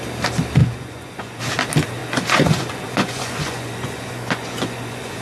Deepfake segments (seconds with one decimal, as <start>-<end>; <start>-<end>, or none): 0.6-1.4; 2.0-5.2